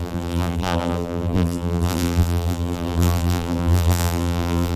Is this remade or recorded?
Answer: remade